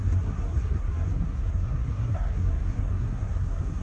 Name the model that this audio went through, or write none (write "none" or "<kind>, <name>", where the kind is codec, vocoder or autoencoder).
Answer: codec, SNAC